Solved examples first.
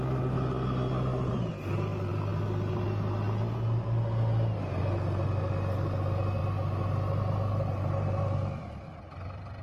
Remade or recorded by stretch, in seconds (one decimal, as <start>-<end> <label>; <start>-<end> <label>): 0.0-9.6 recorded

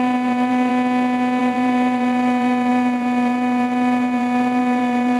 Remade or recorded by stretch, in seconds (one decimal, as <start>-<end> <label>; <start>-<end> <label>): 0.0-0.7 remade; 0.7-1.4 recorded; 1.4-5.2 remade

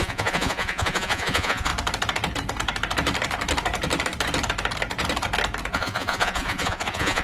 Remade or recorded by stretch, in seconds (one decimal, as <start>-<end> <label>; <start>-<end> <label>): 0.0-1.7 remade; 1.7-5.7 recorded; 5.7-7.2 remade

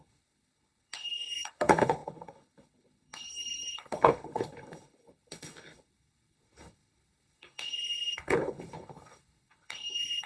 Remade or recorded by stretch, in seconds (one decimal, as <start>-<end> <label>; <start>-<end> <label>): 0.0-10.3 remade